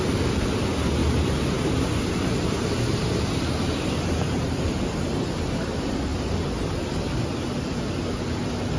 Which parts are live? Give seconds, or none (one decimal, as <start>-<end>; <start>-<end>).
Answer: 0.0-1.0; 4.4-8.8